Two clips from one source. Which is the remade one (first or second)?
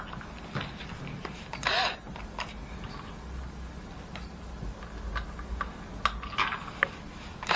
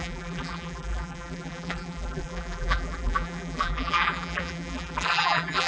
second